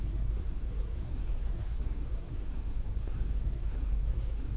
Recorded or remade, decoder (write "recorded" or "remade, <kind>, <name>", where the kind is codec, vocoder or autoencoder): remade, codec, SNAC